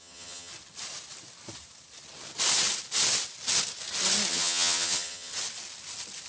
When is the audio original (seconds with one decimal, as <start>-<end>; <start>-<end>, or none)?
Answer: 0.5-4.3; 5.3-6.3